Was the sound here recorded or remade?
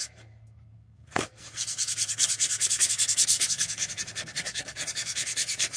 remade